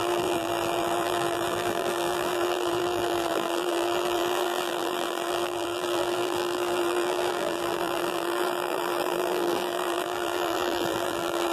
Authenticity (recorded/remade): remade